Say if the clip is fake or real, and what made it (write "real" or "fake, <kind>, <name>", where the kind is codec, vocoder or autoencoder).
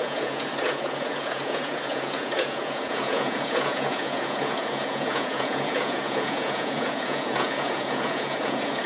fake, vocoder, Vocos